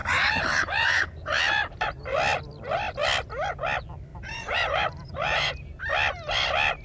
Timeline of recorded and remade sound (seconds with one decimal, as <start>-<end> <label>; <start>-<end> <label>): 0.0-1.4 remade; 1.4-4.1 recorded; 4.1-5.5 remade; 5.5-6.8 recorded